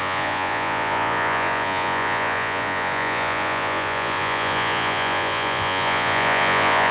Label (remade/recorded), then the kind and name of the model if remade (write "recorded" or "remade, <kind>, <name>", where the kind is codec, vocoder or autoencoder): remade, vocoder, Vocos